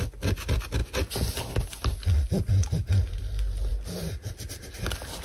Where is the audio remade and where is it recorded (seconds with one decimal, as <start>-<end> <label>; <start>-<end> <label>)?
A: 0.0-5.2 recorded